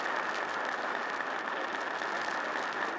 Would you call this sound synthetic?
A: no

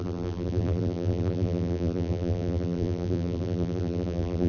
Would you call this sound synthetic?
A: yes